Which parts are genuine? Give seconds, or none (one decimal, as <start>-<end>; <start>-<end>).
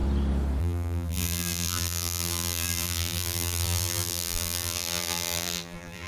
0.0-0.6